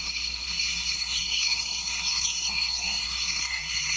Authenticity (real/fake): fake